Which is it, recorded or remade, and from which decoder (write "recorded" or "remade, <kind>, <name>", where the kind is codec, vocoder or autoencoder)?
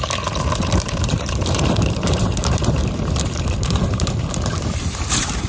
remade, vocoder, BigVGAN v2